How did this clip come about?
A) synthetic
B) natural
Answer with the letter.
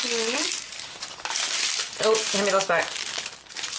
B